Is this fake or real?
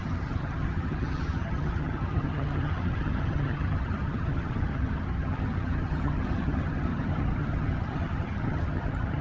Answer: fake